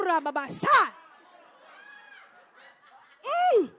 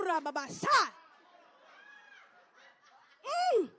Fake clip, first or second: second